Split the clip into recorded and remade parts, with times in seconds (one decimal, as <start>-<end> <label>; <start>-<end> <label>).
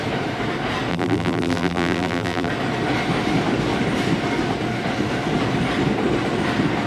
0.0-0.9 recorded; 0.9-2.5 remade; 2.5-6.9 recorded